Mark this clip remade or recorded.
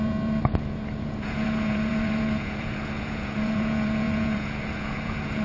remade